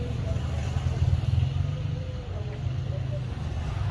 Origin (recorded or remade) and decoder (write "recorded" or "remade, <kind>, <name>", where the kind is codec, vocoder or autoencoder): recorded